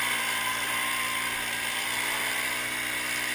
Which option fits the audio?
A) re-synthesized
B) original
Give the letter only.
A